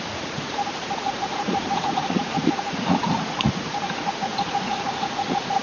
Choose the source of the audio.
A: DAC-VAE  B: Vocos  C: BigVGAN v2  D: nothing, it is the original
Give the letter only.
B